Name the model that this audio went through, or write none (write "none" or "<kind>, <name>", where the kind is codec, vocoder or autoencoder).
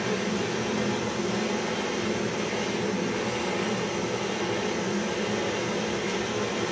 none